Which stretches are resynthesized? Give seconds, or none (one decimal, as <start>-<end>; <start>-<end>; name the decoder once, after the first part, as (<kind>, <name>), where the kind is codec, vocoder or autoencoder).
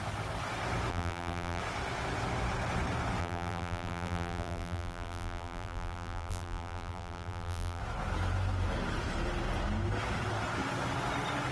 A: 0.9-1.6 (vocoder, BigVGAN v2); 3.2-7.8